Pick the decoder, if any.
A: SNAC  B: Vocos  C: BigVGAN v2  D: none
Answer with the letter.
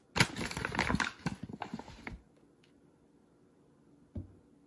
D